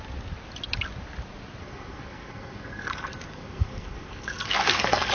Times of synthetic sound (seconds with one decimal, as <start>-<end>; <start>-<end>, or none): 1.6-5.1